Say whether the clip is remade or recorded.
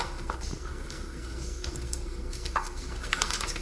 remade